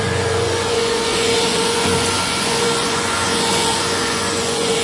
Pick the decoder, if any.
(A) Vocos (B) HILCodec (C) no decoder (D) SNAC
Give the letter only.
A